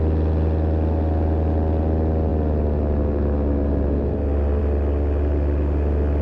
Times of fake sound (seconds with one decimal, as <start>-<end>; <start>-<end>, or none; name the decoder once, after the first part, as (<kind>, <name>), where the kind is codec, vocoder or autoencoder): none